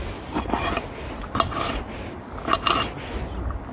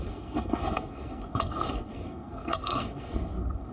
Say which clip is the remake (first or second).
second